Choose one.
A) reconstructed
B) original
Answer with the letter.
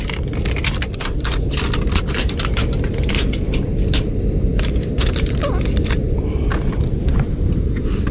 B